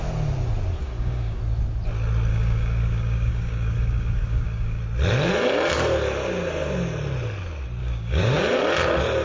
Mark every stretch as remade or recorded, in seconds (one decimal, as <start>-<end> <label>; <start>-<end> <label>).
0.0-0.8 recorded; 0.8-1.4 remade; 1.4-2.3 recorded; 2.3-4.8 remade; 4.8-7.8 recorded; 7.8-8.4 remade; 8.4-9.2 recorded